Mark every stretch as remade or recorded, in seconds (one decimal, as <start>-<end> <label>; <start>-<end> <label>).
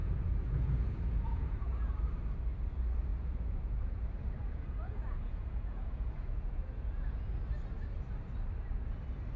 0.0-1.9 remade; 1.9-3.1 recorded; 3.1-4.0 remade; 4.0-4.4 recorded; 4.4-7.1 remade; 7.1-9.4 recorded